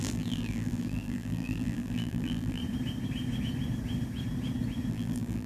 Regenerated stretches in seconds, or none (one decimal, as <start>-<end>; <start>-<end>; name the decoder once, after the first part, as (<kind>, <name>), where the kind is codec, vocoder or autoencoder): 0.0-2.6 (vocoder, BigVGAN v2); 4.9-5.5